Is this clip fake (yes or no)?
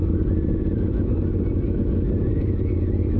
no